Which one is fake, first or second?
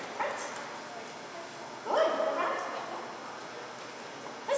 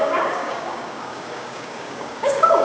second